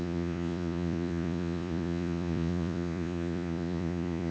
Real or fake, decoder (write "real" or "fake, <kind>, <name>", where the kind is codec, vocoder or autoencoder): fake, vocoder, Vocos